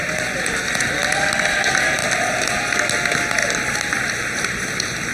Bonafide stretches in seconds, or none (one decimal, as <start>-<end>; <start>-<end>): 0.0-2.0; 2.6-3.4